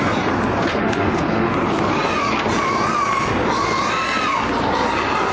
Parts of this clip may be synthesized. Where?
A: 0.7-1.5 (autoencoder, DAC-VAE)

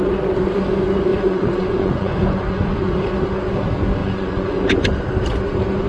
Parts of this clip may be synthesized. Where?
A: 1.1-2.9 (vocoder, Vocos); 4.0-5.0

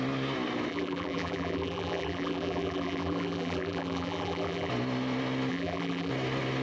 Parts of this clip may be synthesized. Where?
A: 0.7-4.7 (vocoder, BigVGAN v2); 5.5-6.1

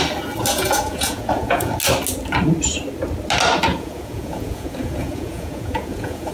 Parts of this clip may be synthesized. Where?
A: 0.5-1.7 (vocoder, Vocos); 3.7-6.3